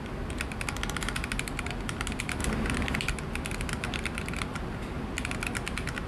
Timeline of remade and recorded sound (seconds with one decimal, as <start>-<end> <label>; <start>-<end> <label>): 0.0-6.1 recorded